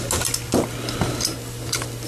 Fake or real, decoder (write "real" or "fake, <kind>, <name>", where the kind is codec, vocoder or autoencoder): real